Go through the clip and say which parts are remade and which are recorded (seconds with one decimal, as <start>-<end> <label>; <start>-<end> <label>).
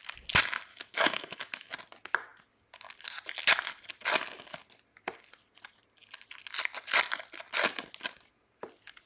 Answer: 0.0-0.7 recorded; 0.7-1.7 remade; 1.7-9.1 recorded